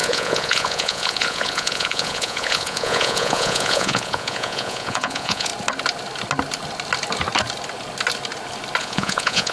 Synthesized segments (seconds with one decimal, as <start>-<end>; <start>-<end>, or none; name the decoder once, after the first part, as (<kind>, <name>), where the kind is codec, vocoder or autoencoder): 0.0-5.5 (vocoder, Vocos); 8.8-9.5